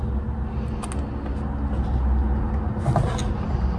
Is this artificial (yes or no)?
no